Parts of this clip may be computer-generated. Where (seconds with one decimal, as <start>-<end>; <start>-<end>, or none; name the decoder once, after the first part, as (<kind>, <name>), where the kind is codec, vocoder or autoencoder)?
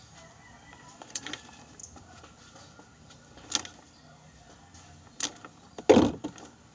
0.7-1.3 (vocoder, Vocos)